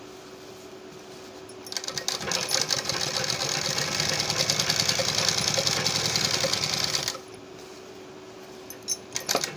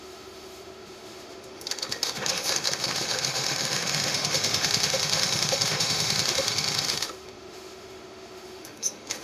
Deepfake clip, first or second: second